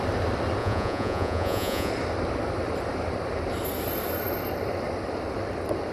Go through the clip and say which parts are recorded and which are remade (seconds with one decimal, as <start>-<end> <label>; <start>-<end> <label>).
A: 0.0-0.6 recorded; 0.6-1.9 remade; 1.9-5.9 recorded